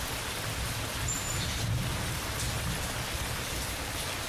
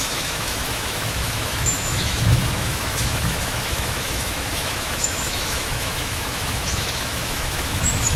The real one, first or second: first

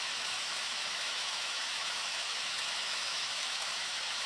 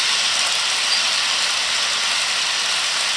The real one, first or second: second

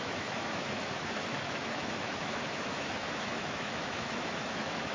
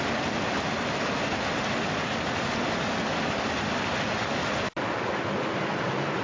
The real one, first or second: second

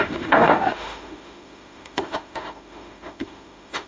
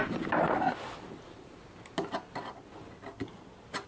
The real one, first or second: second